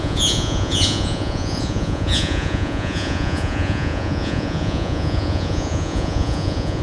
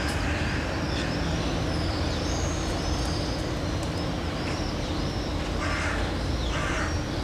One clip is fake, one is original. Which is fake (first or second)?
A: first